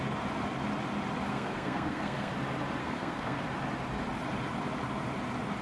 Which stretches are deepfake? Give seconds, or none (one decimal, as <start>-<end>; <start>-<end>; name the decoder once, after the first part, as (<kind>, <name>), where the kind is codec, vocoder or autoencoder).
1.3-2.3 (codec, SNAC); 2.8-3.4